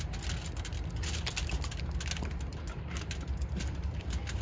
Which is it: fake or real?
real